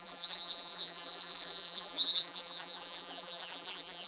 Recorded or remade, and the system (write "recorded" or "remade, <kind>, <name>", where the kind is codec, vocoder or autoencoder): remade, vocoder, BigVGAN v2